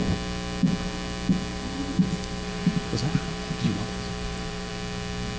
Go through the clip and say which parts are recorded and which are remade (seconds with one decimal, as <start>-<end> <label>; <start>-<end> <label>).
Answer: 0.0-1.5 recorded; 1.5-4.7 remade; 4.7-5.4 recorded